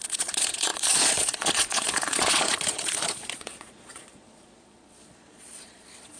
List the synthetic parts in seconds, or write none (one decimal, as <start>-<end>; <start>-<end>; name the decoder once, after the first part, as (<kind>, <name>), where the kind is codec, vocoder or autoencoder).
0.0-6.2 (vocoder, Vocos)